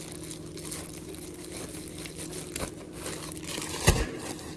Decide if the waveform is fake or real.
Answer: real